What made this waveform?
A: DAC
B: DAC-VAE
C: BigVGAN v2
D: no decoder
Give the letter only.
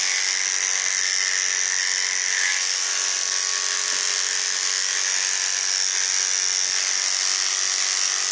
D